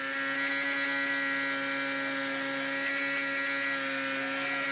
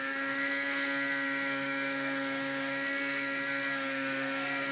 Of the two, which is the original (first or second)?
first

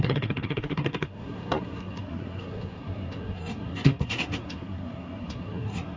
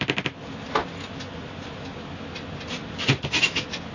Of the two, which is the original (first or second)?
second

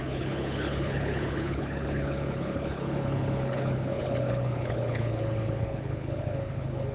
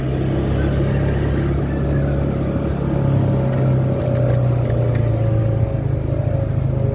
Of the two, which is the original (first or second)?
second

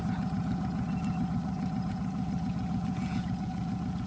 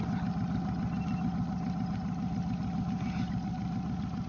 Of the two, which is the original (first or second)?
second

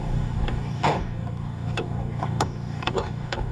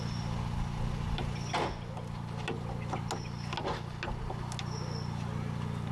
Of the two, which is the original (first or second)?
second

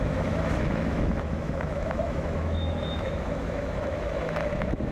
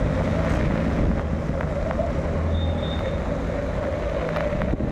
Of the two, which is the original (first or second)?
second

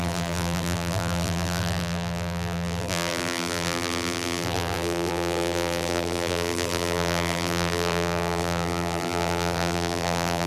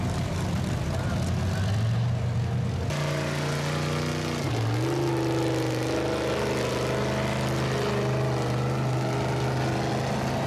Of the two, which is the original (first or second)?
second